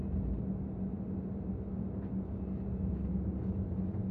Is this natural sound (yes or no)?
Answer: yes